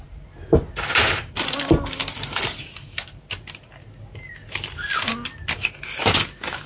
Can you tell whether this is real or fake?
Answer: real